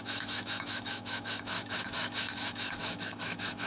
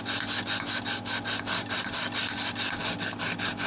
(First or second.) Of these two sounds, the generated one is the first